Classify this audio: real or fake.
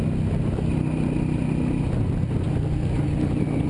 real